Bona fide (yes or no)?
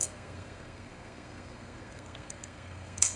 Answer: no